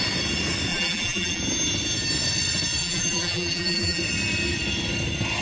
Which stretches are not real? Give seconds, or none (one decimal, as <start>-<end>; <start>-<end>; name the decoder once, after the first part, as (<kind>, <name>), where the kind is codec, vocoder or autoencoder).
0.7-1.4 (vocoder, BigVGAN v2); 2.8-4.0